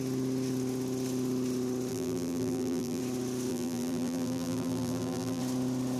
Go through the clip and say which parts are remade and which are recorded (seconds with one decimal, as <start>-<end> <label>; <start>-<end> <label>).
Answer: 0.0-1.9 recorded; 1.9-3.0 remade; 3.0-3.5 recorded; 3.5-5.4 remade; 5.4-6.0 recorded